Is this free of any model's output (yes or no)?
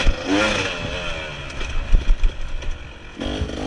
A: yes